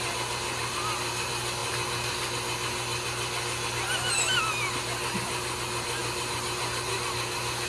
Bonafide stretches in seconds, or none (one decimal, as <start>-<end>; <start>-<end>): 0.0-7.7